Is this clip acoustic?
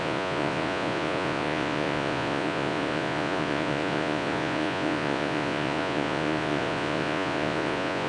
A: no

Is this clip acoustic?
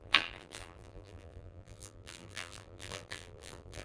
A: no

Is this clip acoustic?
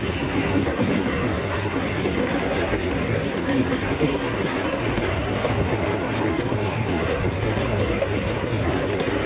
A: no